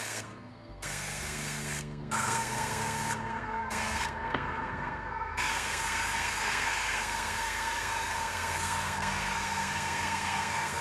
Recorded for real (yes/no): no